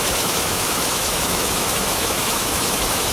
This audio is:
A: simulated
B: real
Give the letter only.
A